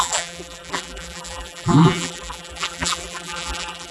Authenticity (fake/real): fake